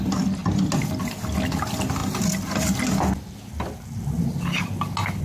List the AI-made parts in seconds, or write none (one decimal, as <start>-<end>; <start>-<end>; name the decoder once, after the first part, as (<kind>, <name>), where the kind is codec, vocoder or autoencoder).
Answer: none